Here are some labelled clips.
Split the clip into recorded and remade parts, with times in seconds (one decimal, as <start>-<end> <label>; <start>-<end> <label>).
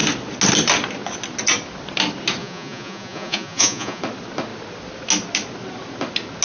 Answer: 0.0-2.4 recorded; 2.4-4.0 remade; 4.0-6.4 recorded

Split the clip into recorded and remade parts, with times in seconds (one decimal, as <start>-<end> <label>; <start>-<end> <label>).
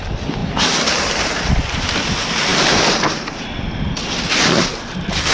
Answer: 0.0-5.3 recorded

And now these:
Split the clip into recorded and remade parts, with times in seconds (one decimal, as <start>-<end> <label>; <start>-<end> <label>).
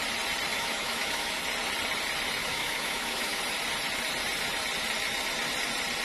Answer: 0.0-0.5 recorded; 0.5-1.4 remade; 1.4-2.4 recorded; 2.4-3.4 remade; 3.4-6.0 recorded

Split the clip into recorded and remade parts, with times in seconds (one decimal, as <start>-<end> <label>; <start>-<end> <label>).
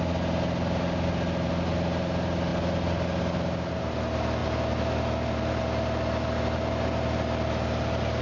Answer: 0.0-8.2 recorded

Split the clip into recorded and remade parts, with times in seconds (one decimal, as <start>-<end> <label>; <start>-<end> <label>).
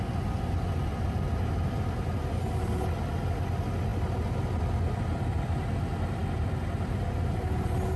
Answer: 0.0-8.0 recorded